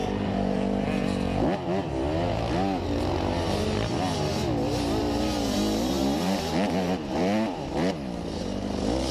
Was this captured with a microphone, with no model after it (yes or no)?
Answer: yes